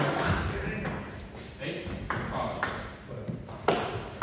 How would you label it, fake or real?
real